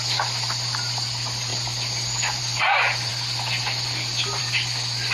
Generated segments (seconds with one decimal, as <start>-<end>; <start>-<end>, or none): none